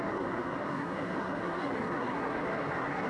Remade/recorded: remade